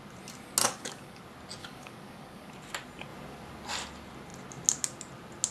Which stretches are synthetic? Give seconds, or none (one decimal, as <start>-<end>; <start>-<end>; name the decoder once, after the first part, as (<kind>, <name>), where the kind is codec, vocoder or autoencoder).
0.6-1.2 (codec, DAC); 1.6-2.5